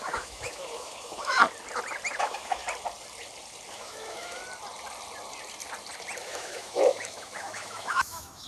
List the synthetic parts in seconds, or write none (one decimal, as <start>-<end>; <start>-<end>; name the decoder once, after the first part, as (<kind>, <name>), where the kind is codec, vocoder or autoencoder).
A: 0.0-1.4 (autoencoder, DAC-VAE); 2.2-2.6; 3.7-4.4; 6.2-8.5